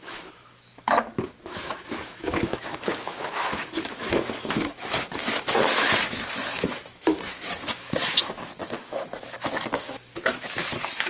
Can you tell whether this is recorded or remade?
remade